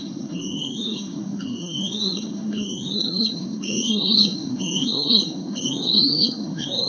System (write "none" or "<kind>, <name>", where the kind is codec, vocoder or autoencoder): codec, SNAC